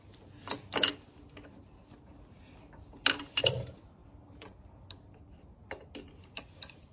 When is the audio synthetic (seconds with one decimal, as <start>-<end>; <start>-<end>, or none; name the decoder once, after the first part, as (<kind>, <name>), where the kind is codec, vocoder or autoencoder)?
4.0-4.7 (vocoder, BigVGAN v2)